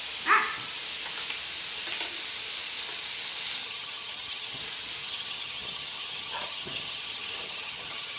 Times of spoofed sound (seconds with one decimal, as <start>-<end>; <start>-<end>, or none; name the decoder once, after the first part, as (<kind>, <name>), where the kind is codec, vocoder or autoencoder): 3.6-4.6 (vocoder, HiFi-GAN); 5.0-8.2